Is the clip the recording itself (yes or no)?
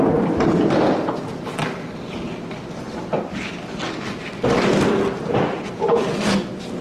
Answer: yes